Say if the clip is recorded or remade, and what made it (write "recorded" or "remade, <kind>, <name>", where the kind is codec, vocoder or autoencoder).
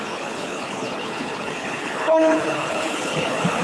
remade, codec, HILCodec